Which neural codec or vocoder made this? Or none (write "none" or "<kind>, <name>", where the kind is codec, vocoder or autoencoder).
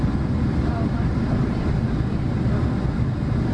none